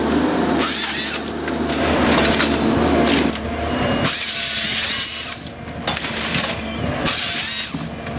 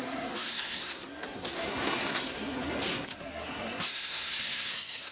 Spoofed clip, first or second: second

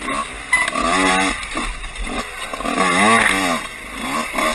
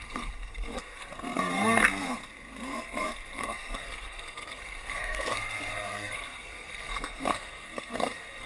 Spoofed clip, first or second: second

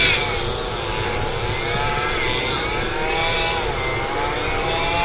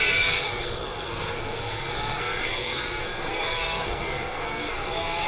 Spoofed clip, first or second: second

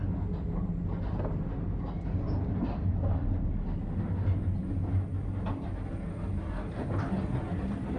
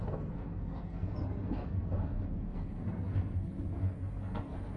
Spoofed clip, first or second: second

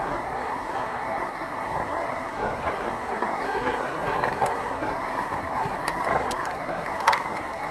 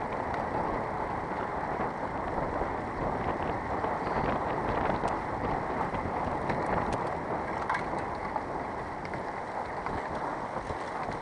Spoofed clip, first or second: first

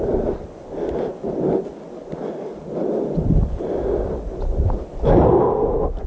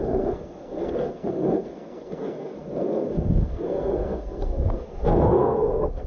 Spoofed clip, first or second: second